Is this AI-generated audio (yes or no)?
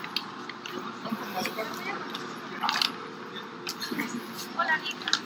no